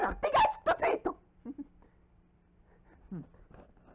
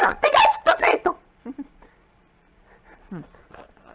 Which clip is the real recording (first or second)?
first